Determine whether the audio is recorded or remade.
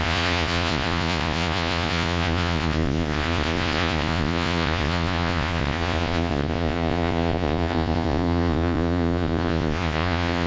remade